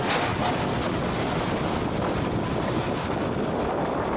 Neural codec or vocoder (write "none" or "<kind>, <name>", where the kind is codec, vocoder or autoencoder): none